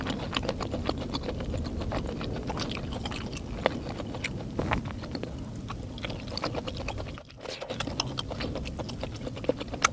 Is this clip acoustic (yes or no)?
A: yes